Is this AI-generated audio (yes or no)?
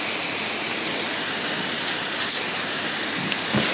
no